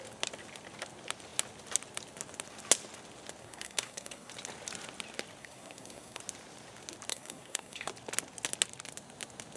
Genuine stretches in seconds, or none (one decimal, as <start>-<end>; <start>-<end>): 0.0-3.4; 4.3-5.4; 6.2-7.1; 7.9-9.6